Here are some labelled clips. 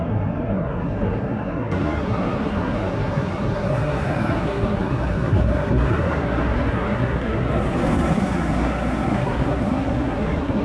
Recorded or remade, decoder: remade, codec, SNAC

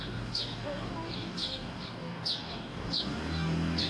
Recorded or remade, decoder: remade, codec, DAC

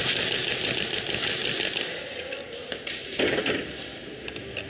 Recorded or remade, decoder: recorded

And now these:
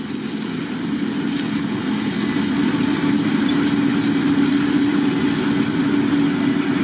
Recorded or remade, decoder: recorded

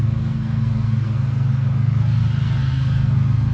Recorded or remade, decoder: remade, codec, SNAC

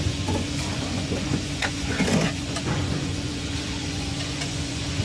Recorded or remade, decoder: remade, vocoder, Vocos